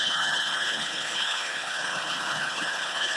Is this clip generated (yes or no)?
yes